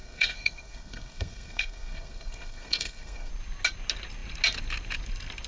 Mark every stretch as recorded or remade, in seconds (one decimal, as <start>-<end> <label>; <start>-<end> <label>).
0.0-3.3 remade; 3.3-5.5 recorded